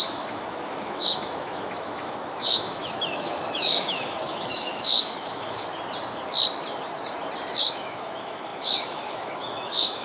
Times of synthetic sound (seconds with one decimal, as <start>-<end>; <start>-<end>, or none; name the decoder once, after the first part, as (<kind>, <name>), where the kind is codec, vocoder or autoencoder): 0.0-5.7 (autoencoder, DAC-VAE); 7.6-10.0